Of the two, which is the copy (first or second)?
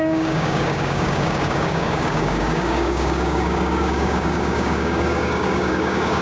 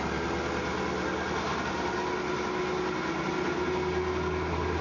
first